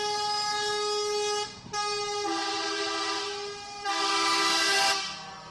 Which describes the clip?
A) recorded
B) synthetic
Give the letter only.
A